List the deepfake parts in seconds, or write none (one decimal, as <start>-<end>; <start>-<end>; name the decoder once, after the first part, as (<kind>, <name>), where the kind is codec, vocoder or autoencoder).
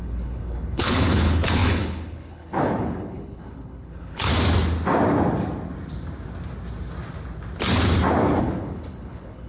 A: 0.0-4.3 (codec, HILCodec); 8.4-9.5